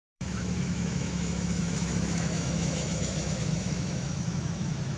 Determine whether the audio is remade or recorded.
remade